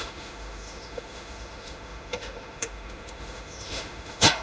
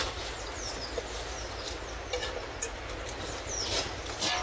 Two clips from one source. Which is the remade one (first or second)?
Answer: first